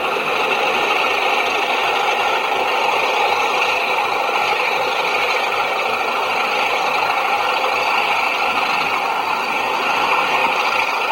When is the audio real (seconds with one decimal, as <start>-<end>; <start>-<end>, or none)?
0.0-11.1